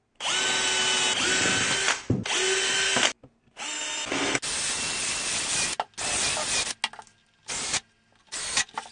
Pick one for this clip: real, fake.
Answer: real